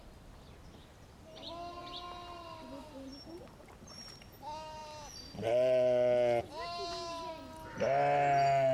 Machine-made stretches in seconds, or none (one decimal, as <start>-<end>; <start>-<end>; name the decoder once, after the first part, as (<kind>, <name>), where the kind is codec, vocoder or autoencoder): none